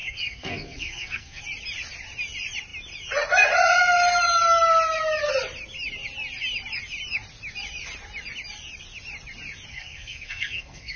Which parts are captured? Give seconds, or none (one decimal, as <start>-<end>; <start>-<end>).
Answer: 1.4-9.7